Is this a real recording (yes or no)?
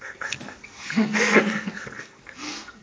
no